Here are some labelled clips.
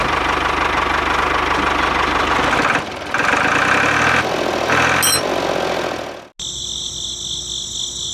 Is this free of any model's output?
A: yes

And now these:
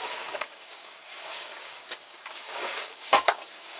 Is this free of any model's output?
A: no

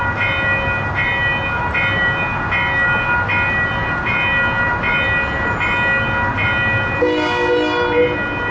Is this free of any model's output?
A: yes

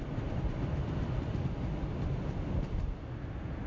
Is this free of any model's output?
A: yes